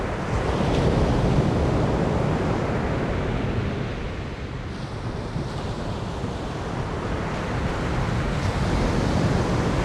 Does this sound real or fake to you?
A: real